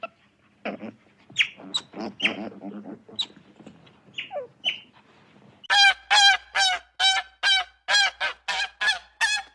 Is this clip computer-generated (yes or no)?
no